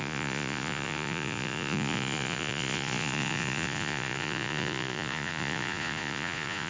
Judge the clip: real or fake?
fake